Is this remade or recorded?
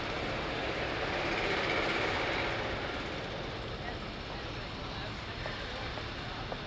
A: recorded